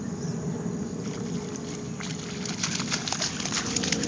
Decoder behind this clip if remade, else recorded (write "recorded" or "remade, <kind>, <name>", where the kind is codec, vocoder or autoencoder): recorded